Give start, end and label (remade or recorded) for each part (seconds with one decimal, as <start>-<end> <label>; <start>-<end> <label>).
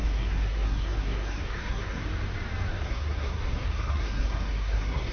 0.0-2.0 remade; 2.0-2.7 recorded; 2.7-5.1 remade